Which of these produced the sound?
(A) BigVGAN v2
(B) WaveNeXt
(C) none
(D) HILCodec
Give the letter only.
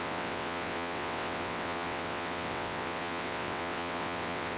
B